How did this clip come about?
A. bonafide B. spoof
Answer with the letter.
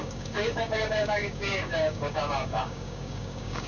B